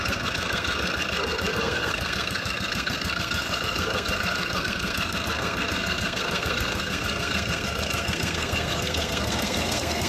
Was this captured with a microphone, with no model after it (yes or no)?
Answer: no